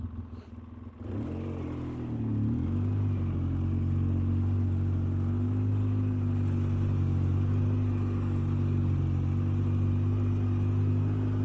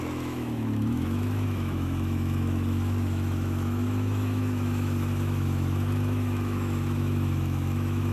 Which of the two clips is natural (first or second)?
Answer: first